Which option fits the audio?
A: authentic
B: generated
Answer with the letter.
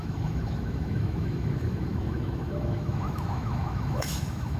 B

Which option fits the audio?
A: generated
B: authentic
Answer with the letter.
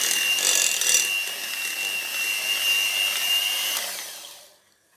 B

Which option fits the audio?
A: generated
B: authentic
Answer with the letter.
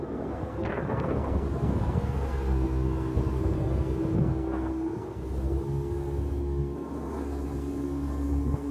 A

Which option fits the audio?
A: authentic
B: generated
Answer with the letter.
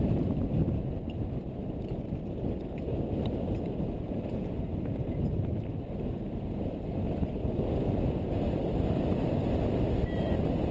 A